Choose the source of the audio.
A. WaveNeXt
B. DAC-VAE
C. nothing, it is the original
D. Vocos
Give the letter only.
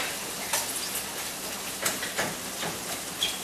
C